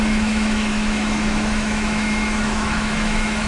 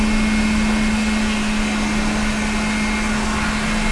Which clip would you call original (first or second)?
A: second